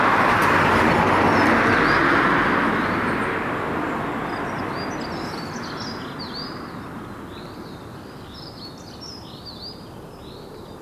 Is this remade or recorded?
recorded